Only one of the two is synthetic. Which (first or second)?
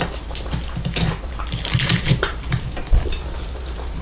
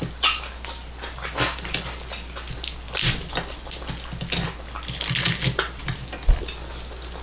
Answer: first